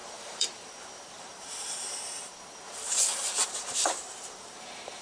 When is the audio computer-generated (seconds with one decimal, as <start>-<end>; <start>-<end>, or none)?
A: 0.0-2.3; 3.5-5.0